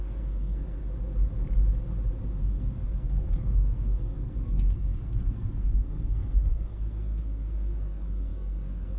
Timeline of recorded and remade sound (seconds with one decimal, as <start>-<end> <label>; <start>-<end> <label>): 0.0-0.8 remade; 0.8-2.4 recorded; 2.4-9.0 remade